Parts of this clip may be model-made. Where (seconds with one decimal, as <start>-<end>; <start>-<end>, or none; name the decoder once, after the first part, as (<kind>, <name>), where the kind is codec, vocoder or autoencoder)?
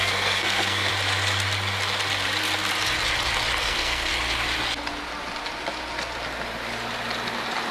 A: 0.0-0.9 (codec, SNAC); 3.6-4.1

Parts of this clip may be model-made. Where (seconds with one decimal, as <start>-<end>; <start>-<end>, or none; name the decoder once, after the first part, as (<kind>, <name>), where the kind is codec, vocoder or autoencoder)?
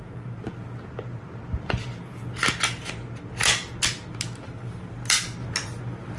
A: none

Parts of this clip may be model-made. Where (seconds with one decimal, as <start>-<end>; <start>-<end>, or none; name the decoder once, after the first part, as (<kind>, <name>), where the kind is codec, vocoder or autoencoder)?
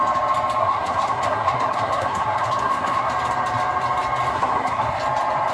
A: 0.6-3.1 (codec, SNAC); 4.3-5.0